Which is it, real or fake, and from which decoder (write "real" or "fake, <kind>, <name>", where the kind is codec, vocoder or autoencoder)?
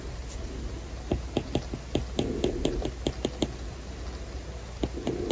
real